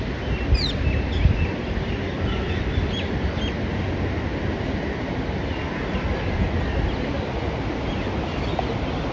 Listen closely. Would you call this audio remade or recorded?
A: recorded